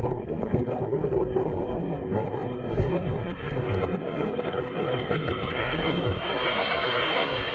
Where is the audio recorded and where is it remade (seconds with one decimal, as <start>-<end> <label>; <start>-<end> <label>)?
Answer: 0.0-7.5 remade